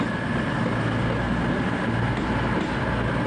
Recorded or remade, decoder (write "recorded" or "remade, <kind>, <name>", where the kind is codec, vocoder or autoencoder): recorded